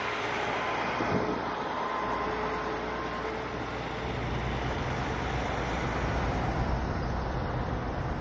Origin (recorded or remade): recorded